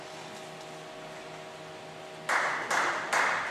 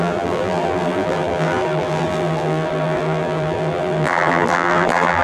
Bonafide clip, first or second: first